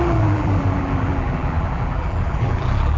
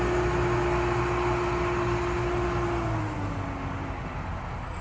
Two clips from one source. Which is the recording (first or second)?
second